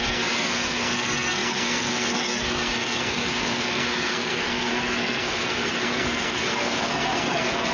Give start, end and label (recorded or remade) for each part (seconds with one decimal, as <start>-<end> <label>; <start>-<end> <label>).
0.0-7.7 remade